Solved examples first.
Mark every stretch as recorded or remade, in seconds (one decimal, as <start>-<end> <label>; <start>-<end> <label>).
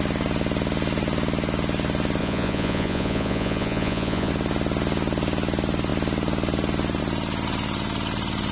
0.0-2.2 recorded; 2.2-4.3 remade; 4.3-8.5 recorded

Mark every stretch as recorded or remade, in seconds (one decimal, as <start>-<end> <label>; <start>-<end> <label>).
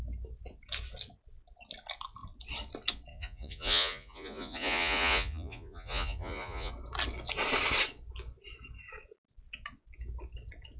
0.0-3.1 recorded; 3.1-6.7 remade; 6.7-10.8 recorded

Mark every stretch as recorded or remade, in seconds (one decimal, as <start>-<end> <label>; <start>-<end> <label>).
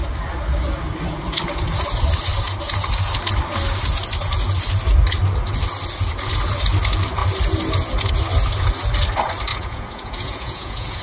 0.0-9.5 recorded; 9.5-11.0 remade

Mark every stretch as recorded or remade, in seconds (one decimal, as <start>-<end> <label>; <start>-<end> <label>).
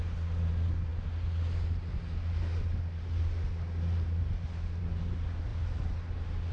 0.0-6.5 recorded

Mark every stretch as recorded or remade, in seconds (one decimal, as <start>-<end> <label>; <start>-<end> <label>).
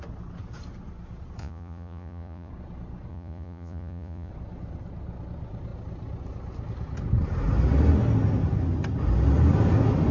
0.0-1.4 recorded; 1.4-2.5 remade; 2.5-3.1 recorded; 3.1-4.3 remade; 4.3-10.1 recorded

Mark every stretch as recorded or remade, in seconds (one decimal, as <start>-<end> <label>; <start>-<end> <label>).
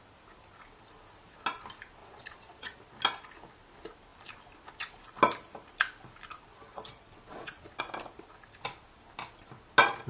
0.0-2.0 recorded; 2.0-2.8 remade; 2.8-6.5 recorded; 6.5-7.8 remade; 7.8-10.1 recorded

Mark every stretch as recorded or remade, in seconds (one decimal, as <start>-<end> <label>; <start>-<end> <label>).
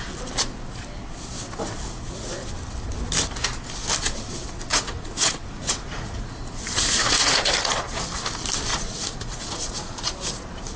0.0-4.7 recorded; 4.7-7.4 remade; 7.4-8.7 recorded; 8.7-10.2 remade; 10.2-10.8 recorded